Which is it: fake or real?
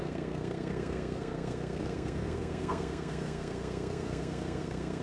fake